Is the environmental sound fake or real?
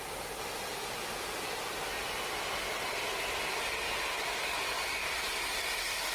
real